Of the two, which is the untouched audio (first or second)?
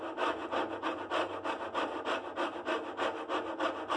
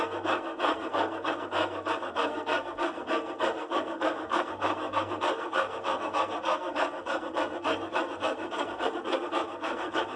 first